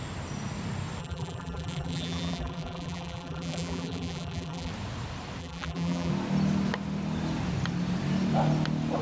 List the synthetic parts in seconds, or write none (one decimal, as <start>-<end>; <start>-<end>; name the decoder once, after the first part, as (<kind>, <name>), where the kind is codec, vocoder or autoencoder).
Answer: 1.0-4.7 (vocoder, BigVGAN v2); 5.4-6.1